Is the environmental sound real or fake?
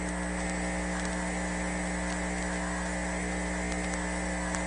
real